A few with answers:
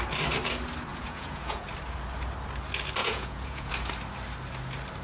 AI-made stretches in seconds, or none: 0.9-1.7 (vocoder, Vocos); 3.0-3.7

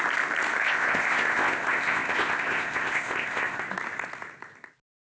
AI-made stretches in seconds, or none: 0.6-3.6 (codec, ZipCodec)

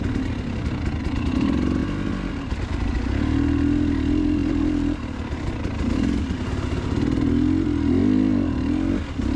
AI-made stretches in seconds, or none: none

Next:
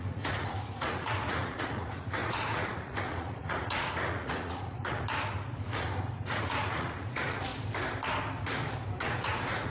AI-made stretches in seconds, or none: 0.0-7.5 (vocoder, Vocos); 9.0-9.7

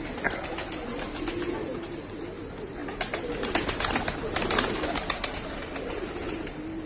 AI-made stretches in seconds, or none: none